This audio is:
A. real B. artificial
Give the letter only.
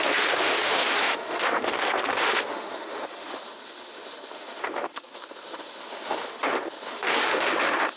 B